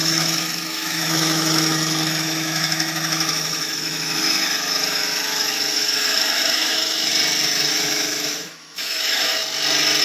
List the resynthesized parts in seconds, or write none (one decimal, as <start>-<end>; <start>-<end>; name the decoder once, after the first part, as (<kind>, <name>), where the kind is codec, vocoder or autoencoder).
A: 0.0-7.1 (autoencoder, DAC-VAE); 7.7-9.4